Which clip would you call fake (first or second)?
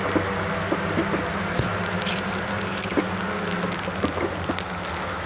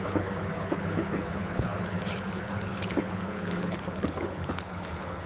second